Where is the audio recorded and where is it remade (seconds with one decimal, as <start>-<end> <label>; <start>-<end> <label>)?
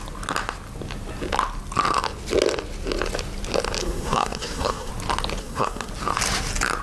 0.0-3.8 recorded; 3.8-4.9 remade; 4.9-5.4 recorded; 5.4-5.9 remade; 5.9-6.8 recorded